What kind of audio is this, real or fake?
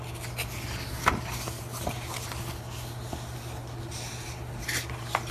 real